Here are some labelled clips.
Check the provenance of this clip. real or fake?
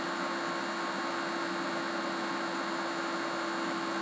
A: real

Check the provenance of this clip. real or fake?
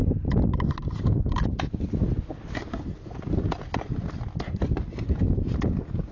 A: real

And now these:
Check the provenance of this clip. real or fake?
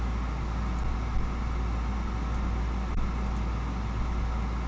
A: real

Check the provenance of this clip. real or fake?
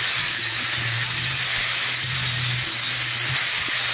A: real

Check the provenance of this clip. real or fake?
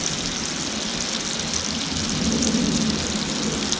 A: real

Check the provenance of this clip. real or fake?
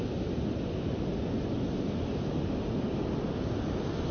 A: real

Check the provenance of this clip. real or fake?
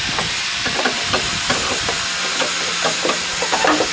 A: real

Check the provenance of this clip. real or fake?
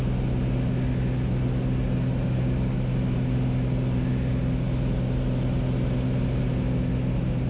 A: real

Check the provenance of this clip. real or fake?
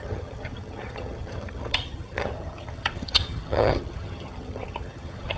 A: fake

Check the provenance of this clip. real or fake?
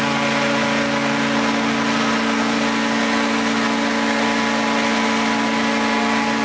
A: real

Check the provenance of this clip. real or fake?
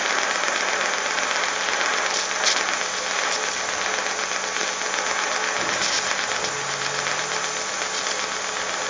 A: real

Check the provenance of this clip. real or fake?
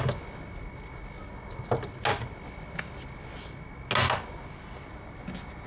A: real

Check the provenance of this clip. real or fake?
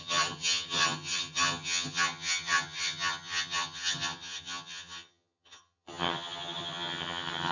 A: fake